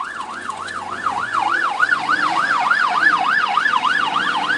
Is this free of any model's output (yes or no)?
no